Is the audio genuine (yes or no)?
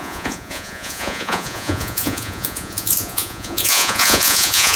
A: no